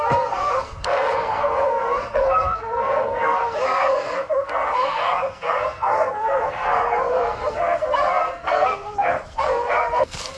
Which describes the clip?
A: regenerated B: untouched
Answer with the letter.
A